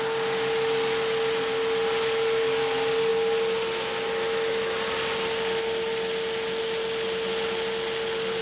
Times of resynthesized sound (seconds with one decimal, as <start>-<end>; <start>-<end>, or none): none